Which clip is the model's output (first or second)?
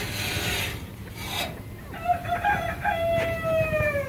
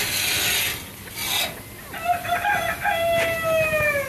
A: first